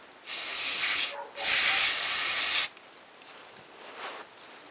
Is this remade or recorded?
recorded